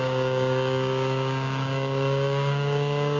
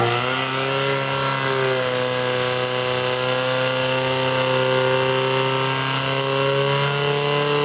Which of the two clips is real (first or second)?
second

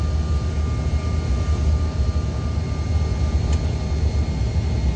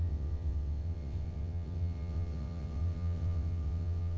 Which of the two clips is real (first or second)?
first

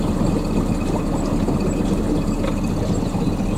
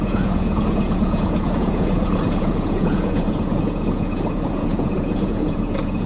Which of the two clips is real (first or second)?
first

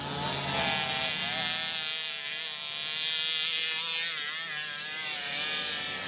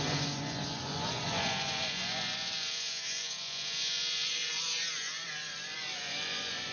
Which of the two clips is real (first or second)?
first